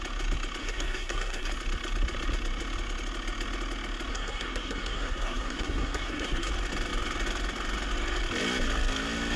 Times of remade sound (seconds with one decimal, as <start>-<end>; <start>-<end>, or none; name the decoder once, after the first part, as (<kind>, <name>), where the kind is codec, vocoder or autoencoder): 0.6-1.5 (codec, SNAC); 4.1-6.5